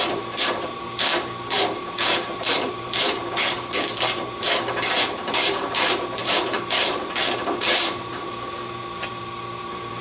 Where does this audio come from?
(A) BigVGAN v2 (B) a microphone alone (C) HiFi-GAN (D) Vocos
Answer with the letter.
A